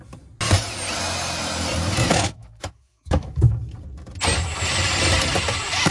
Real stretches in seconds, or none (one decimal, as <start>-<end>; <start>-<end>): 0.0-2.1; 3.6-5.9

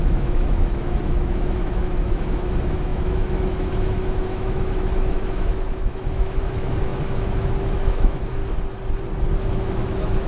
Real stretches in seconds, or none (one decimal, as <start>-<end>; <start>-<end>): 8.4-9.4

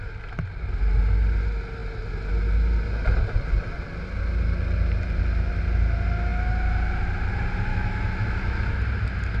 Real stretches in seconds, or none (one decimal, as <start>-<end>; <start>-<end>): 0.0-7.7; 8.8-9.4